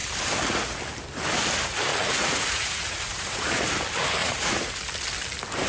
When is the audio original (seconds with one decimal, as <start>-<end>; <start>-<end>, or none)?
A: 0.0-1.9; 3.7-4.2; 4.8-5.7